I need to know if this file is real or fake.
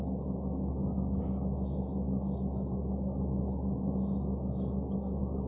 fake